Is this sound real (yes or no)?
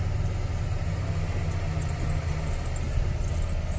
yes